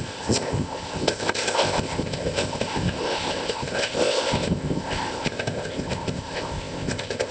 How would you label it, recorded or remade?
remade